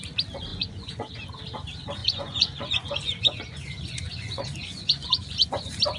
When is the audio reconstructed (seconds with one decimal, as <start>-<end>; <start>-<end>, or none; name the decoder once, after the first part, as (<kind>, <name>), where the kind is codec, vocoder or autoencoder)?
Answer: 0.5-1.1 (vocoder, Vocos); 2.0-5.6